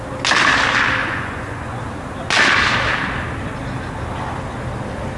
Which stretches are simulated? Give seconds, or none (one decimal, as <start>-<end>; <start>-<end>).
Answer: 1.0-1.8